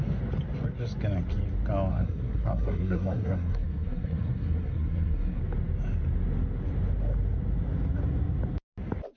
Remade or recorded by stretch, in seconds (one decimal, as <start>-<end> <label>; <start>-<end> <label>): 0.0-1.9 recorded; 1.9-5.4 remade; 5.4-9.2 recorded